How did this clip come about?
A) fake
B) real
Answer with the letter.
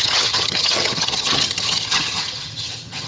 A